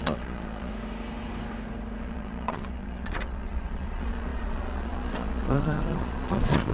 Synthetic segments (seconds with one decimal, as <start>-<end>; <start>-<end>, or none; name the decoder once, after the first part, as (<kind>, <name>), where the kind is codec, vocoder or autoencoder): 0.0-0.7 (vocoder, Vocos); 2.0-6.7